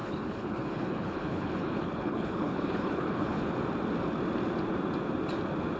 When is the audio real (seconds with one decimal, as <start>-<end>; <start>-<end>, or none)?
3.5-5.8

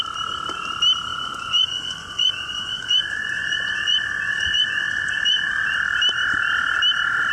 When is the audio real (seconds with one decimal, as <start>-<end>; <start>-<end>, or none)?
0.0-1.1; 5.5-7.3

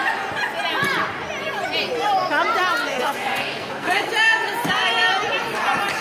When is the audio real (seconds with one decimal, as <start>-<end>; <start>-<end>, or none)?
0.0-2.8; 4.1-6.0